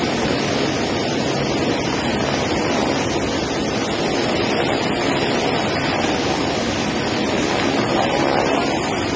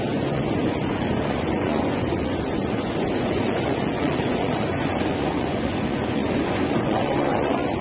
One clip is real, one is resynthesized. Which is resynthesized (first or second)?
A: second